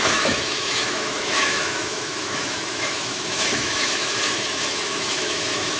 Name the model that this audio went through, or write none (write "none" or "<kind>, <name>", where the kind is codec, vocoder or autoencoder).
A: autoencoder, DAC-VAE